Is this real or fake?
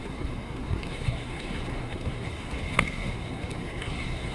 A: fake